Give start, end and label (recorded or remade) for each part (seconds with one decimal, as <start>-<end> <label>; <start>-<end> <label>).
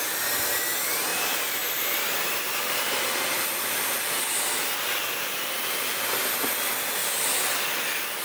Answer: 0.0-8.2 recorded